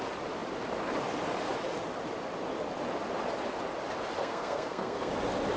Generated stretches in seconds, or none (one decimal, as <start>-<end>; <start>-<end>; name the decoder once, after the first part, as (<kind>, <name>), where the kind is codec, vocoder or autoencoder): 4.2-5.1 (codec, SNAC)